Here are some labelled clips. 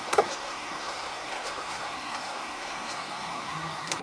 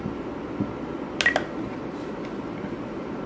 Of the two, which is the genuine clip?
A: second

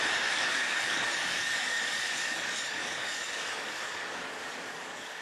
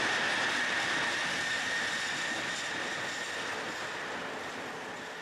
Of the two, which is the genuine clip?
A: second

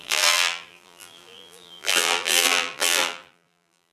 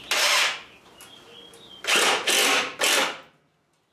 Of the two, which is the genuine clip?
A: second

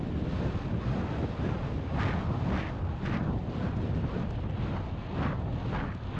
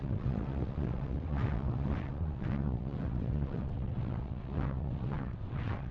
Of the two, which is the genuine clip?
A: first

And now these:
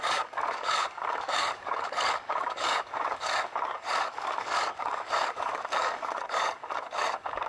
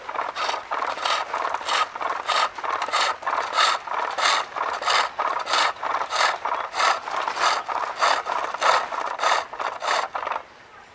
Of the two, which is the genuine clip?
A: second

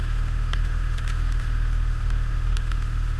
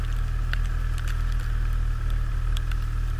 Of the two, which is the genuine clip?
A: second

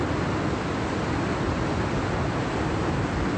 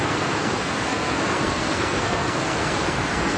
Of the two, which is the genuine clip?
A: first